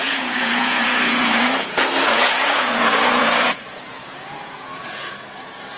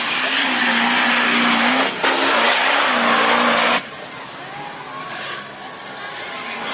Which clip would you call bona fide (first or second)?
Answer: second